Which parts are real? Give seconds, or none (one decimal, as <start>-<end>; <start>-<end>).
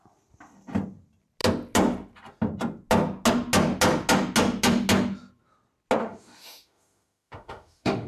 0.0-6.0